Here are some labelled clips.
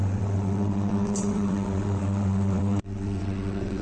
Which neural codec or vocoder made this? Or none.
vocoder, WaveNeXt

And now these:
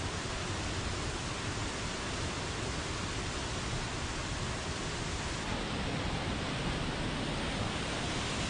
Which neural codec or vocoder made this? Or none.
none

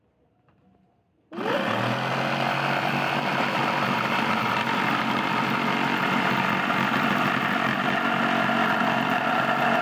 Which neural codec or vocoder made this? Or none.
none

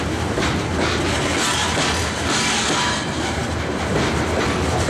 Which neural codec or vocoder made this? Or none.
none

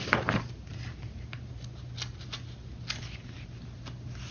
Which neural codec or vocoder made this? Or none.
none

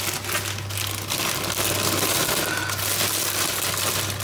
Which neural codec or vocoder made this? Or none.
none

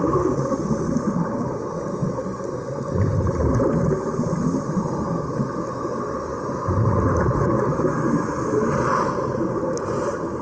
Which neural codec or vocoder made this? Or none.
none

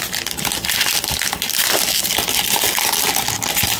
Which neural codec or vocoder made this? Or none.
none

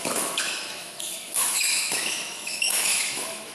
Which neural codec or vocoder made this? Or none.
autoencoder, DAC-VAE